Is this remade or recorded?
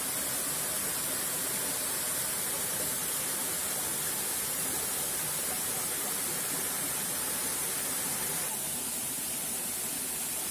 recorded